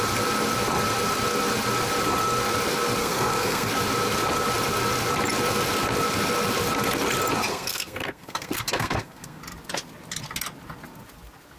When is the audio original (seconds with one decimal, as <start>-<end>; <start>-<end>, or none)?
0.0-3.0; 3.7-7.5; 9.4-11.6